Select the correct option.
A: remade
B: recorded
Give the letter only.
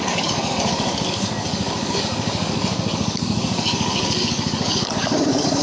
A